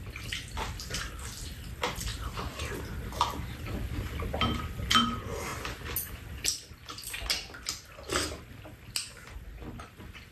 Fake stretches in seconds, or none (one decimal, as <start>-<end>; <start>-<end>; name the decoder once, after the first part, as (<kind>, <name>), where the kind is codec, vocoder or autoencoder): none